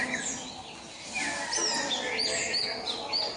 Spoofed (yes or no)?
no